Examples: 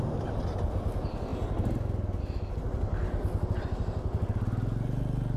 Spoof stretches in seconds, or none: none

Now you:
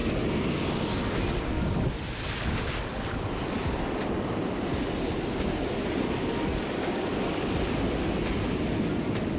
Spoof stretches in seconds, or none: none

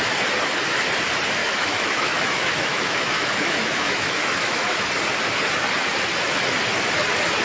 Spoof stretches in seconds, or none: 1.4-4.9 (autoencoder, DAC-VAE)